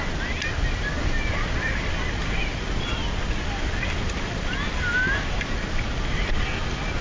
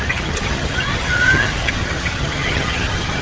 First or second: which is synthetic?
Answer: second